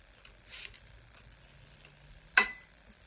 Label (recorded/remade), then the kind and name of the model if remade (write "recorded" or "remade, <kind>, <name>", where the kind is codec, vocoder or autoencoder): recorded